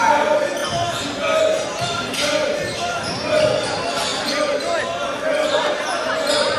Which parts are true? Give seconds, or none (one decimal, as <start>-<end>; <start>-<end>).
0.0-6.6